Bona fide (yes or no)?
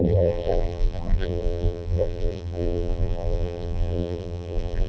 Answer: no